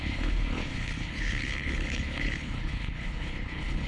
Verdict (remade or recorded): remade